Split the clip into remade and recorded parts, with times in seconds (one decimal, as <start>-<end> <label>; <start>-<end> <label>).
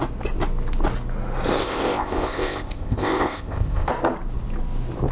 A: 0.0-1.6 recorded; 1.6-3.9 remade; 3.9-5.1 recorded